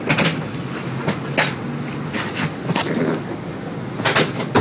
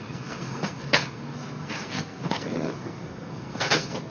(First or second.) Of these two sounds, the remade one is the second